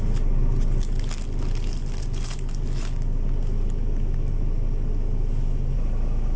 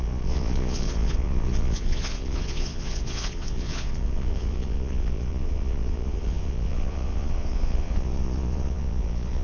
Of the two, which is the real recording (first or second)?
first